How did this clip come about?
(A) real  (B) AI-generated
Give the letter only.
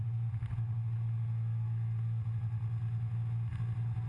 A